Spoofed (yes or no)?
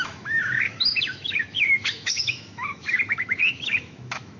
yes